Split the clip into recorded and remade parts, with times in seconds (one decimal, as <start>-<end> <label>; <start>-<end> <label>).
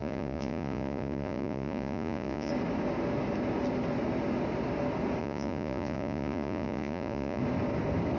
0.0-2.5 remade; 2.5-5.2 recorded; 5.2-7.4 remade; 7.4-8.2 recorded